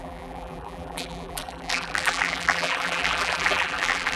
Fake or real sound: fake